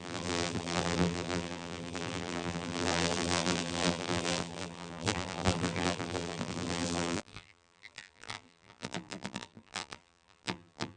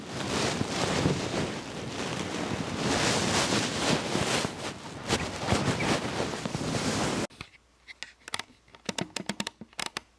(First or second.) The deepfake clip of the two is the first